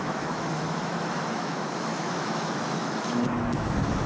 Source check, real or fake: fake